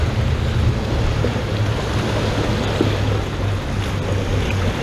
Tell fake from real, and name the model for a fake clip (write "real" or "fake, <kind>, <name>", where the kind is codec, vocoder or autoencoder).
real